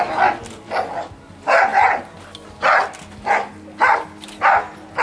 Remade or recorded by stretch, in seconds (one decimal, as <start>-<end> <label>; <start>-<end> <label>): 0.0-5.0 recorded